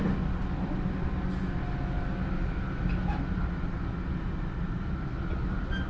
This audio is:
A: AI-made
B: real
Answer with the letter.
B